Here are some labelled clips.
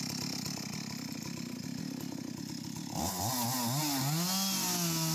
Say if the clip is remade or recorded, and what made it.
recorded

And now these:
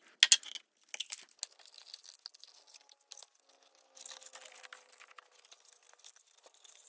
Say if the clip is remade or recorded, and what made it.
recorded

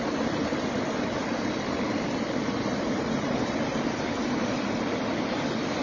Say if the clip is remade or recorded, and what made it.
recorded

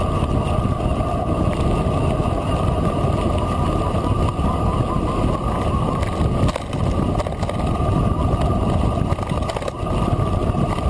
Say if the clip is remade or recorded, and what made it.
recorded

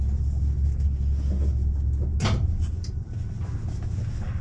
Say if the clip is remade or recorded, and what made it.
recorded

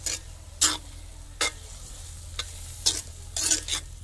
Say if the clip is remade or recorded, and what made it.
recorded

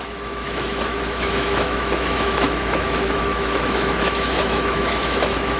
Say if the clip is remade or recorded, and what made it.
remade, autoencoder, DAC-VAE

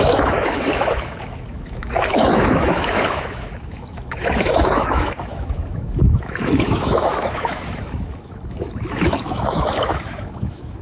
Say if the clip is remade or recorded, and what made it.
remade, autoencoder, DAC-VAE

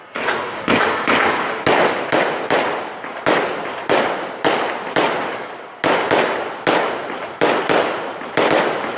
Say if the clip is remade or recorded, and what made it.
recorded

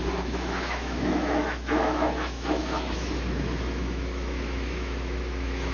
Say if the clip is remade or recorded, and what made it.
remade, autoencoder, DAC-VAE